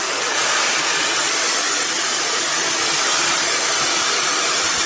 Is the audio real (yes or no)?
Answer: no